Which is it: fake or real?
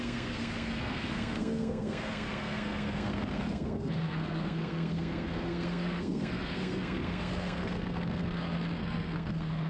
fake